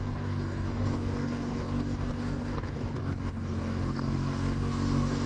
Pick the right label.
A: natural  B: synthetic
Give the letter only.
B